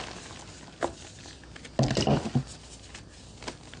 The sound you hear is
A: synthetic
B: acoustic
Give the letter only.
B